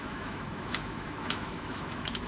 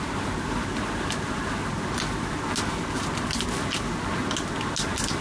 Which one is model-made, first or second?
first